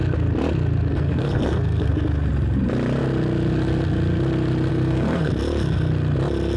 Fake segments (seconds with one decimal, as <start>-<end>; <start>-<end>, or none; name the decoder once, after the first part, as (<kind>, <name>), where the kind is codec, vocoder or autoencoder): 0.9-1.9 (codec, SNAC); 4.7-5.3